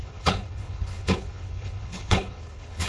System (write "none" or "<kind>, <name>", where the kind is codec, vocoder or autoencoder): codec, HILCodec